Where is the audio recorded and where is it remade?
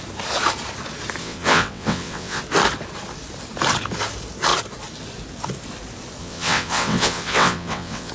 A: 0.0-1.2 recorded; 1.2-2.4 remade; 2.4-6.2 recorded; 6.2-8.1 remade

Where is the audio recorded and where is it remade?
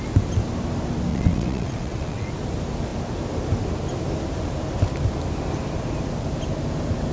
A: 0.0-1.1 recorded; 1.1-2.3 remade; 2.3-7.1 recorded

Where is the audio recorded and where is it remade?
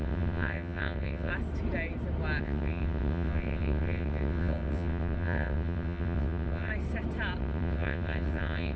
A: 0.0-1.3 remade; 1.3-2.4 recorded; 2.4-6.7 remade; 6.7-7.4 recorded; 7.4-8.8 remade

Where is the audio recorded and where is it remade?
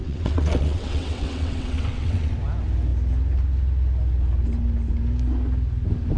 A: 0.0-2.3 remade; 2.3-6.2 recorded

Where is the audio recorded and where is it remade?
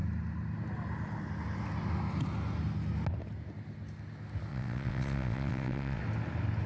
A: 0.0-4.5 recorded; 4.5-6.0 remade; 6.0-6.7 recorded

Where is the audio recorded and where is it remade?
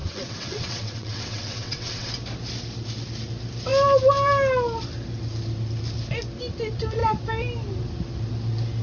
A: 0.0-2.1 remade; 2.1-8.8 recorded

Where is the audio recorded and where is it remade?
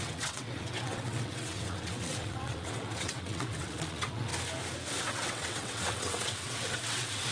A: 0.0-4.3 remade; 4.3-5.0 recorded; 5.0-7.3 remade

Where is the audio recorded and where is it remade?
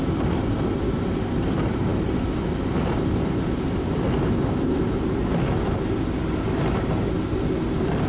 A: 0.0-8.1 recorded